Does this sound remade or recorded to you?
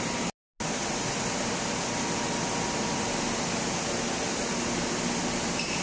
recorded